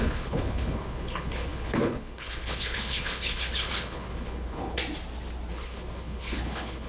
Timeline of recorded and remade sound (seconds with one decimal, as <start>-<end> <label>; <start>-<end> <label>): 0.0-4.8 remade; 4.8-5.5 recorded; 5.5-6.9 remade